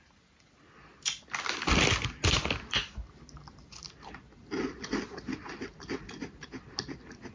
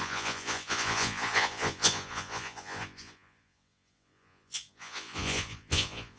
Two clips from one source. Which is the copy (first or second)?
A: second